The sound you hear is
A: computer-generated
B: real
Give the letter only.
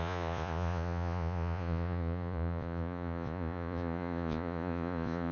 A